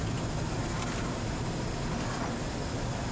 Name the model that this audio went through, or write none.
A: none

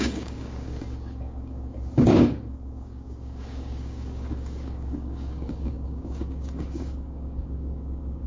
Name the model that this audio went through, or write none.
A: codec, DAC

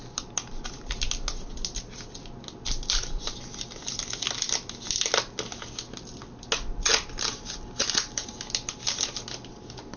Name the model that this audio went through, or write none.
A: none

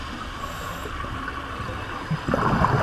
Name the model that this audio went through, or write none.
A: none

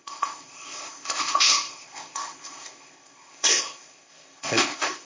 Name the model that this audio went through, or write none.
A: codec, ZipCodec